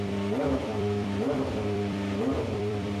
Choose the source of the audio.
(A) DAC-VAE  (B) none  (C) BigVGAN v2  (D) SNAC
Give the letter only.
C